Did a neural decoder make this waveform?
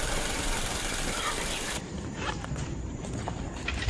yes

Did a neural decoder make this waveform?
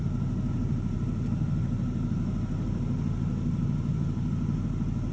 no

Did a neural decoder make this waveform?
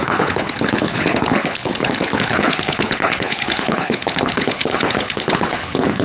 yes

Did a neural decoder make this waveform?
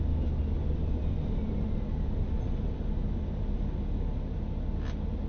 no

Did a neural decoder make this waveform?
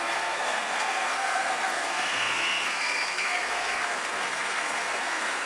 yes